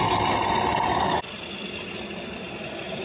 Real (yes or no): yes